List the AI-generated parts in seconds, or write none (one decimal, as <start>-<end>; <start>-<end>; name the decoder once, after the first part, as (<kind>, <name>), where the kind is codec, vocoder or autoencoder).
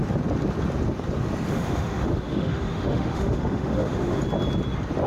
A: 1.5-4.2 (autoencoder, DAC-VAE)